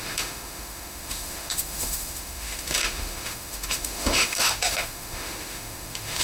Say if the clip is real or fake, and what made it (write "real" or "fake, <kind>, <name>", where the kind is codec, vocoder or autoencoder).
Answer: fake, autoencoder, DAC-VAE